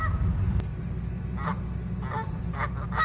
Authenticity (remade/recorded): recorded